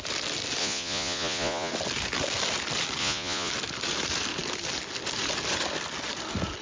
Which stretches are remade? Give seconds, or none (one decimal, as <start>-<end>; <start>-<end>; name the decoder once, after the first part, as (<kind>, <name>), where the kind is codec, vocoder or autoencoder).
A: 0.6-1.7 (vocoder, Vocos); 3.0-3.5